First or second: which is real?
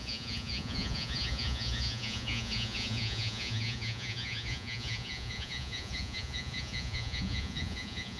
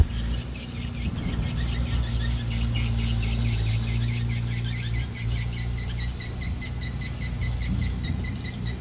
second